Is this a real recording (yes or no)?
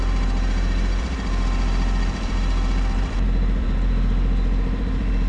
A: no